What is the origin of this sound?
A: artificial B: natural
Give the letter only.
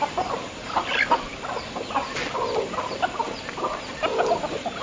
B